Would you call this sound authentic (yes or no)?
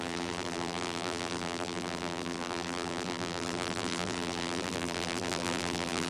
no